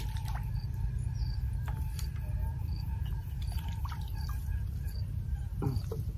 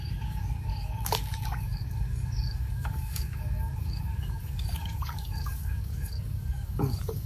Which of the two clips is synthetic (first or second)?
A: second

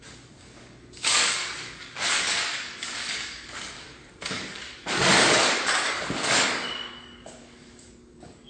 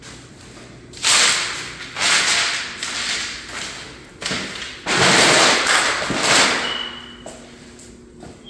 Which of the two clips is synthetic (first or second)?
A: first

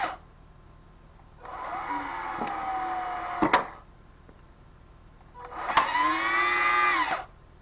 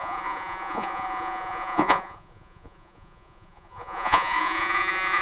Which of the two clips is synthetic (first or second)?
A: second